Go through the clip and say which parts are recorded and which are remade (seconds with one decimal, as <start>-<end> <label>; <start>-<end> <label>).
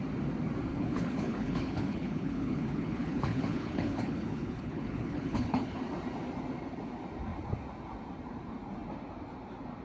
0.0-0.7 recorded; 0.7-5.8 remade; 5.8-9.8 recorded